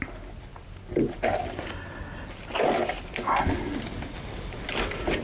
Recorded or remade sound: recorded